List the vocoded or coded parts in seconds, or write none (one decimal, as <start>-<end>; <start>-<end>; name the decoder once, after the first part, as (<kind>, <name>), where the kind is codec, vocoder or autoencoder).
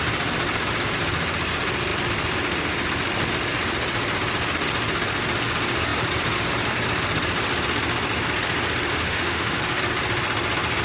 8.9-9.6 (autoencoder, DAC-VAE)